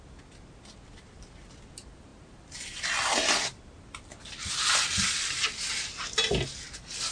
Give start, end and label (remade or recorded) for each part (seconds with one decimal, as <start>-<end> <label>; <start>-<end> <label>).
0.0-7.1 recorded

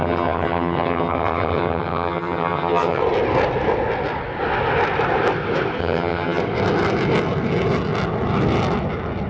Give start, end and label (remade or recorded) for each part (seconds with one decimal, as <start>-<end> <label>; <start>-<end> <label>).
0.0-3.0 remade; 3.0-5.8 recorded; 5.8-6.4 remade; 6.4-9.3 recorded